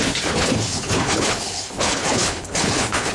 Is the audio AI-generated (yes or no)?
yes